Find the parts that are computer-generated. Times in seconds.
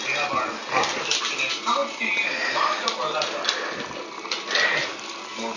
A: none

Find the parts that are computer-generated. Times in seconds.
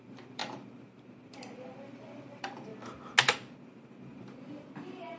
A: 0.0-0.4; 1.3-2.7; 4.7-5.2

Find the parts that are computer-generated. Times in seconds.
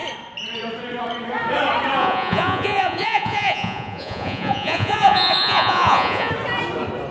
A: 2.0-6.3